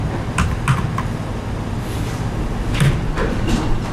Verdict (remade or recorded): recorded